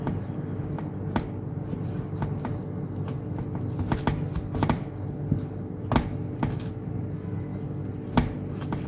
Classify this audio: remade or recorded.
recorded